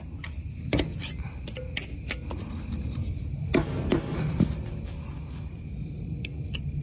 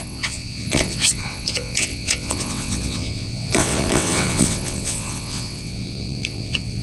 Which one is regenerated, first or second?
second